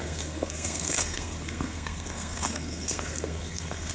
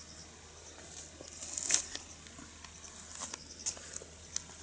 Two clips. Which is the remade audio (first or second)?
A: first